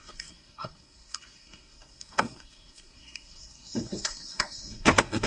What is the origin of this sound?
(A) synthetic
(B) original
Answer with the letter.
A